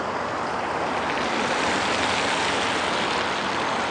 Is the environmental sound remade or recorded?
recorded